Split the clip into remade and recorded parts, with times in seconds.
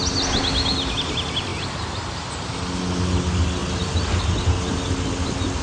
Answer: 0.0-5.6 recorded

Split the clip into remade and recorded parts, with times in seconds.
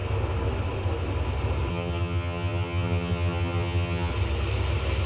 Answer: 0.0-1.7 recorded; 1.7-4.1 remade; 4.1-5.1 recorded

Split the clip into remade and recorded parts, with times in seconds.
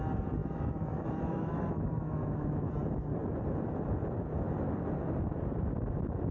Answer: 0.0-0.4 recorded; 0.4-2.7 remade; 2.7-6.3 recorded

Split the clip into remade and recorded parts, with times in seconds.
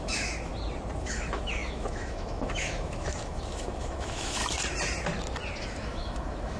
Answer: 0.0-0.5 remade; 0.5-1.0 recorded; 1.0-4.4 remade; 4.4-5.6 recorded; 5.6-6.6 remade